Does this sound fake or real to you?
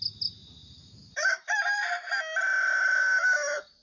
real